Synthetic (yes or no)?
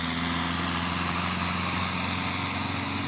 no